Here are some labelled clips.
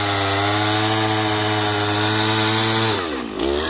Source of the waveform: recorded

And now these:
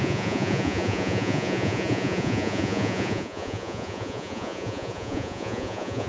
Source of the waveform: remade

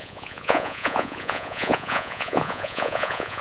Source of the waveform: remade